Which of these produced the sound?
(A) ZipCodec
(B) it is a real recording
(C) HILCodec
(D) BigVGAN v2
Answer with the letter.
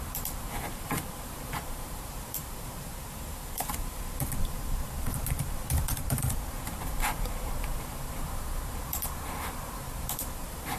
D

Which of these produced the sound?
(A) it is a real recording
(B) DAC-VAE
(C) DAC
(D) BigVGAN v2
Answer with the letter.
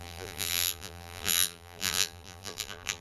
D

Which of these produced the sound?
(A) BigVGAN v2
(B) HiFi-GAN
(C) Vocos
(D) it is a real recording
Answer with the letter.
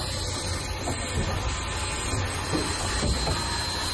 D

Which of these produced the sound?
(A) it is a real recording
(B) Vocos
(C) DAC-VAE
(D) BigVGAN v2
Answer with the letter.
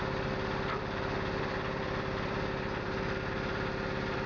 D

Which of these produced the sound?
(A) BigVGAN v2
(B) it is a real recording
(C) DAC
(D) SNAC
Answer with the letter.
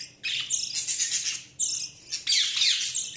B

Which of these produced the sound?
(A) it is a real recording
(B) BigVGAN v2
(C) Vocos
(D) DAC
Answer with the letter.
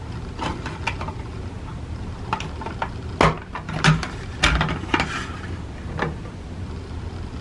A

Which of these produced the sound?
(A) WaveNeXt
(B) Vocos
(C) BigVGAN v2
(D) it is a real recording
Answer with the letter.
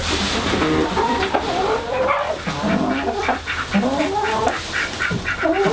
C